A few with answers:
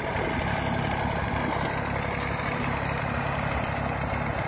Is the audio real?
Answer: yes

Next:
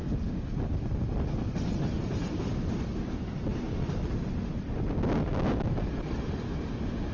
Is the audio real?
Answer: yes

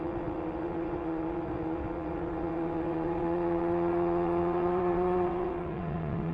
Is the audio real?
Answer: no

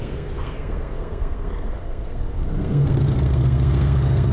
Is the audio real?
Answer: no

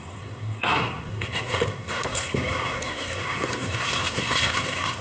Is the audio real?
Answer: no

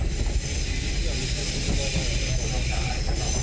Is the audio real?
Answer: yes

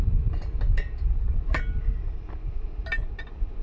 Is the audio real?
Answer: yes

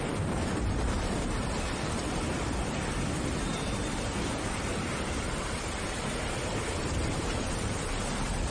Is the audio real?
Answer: no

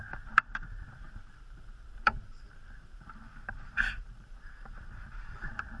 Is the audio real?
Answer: no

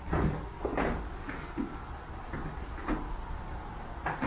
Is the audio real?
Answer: yes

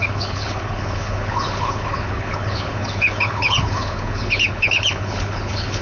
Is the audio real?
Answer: no